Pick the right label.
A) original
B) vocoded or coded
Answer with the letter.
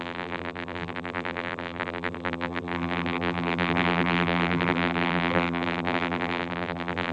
B